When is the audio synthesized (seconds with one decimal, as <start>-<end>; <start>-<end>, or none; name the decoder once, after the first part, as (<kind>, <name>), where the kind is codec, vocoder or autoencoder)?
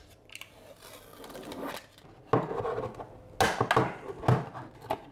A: none